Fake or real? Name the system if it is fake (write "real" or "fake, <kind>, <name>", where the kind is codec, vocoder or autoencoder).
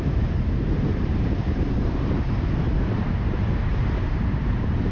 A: fake, vocoder, BigVGAN v2